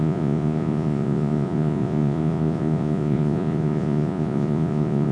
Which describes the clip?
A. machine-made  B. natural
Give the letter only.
A